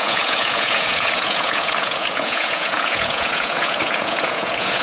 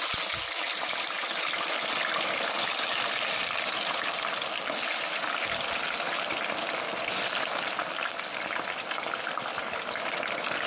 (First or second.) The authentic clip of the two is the second